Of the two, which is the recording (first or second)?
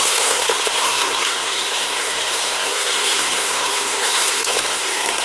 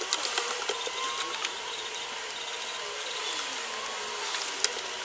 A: second